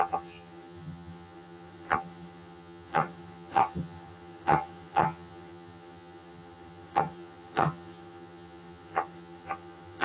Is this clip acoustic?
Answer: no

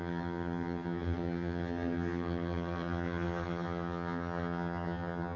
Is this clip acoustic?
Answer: no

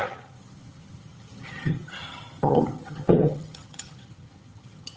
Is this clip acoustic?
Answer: no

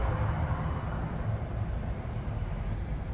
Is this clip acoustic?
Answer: yes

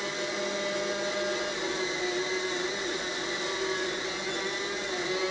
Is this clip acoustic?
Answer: yes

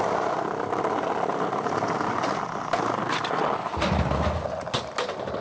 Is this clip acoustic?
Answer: yes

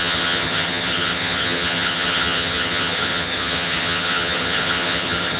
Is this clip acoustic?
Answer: no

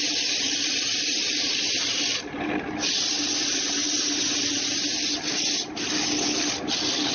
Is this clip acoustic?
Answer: yes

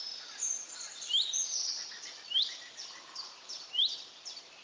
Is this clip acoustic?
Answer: yes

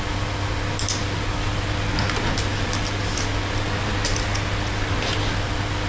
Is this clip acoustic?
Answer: yes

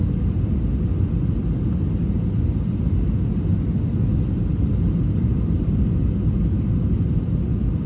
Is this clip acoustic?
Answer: yes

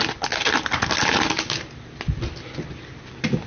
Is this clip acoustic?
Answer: yes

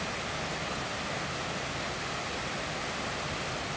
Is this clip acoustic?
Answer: yes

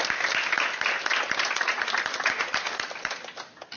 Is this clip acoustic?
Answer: yes